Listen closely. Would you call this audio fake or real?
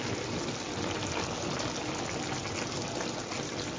real